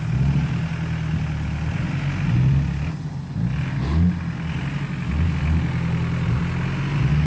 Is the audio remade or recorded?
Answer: recorded